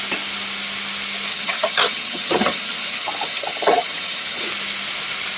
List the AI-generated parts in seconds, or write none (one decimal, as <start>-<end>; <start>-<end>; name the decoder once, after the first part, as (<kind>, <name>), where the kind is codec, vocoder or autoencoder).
1.3-4.5 (vocoder, HiFi-GAN)